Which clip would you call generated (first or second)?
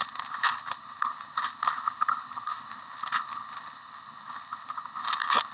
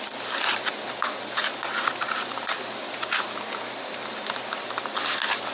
first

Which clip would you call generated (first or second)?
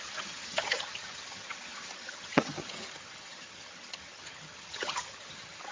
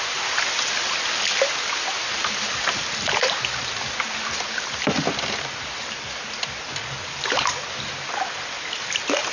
first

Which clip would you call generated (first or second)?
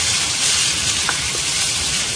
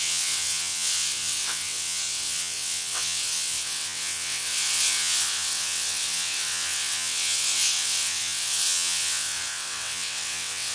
second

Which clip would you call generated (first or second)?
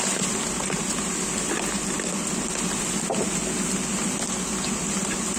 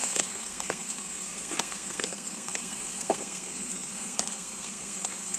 second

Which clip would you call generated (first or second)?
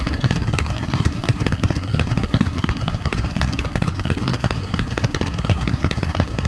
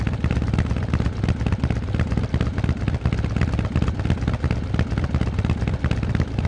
first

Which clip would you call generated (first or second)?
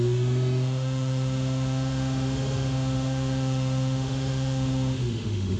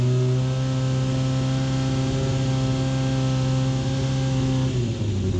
first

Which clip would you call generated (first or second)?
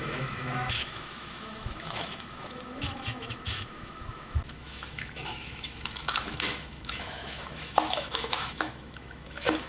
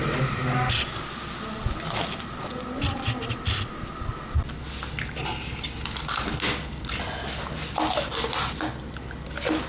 first